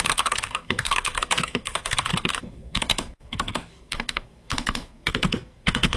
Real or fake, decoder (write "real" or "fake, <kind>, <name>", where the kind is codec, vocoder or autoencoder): fake, codec, SNAC